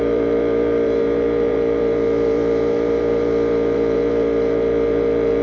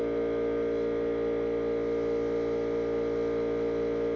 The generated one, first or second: first